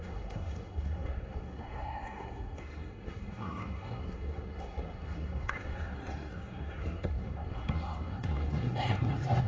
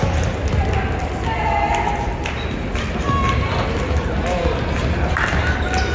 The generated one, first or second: first